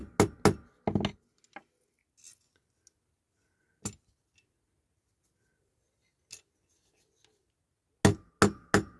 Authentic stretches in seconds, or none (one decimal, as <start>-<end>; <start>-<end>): 0.0-9.0